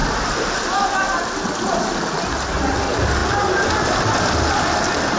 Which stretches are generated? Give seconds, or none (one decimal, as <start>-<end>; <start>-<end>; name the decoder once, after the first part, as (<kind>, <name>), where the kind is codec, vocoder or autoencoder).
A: none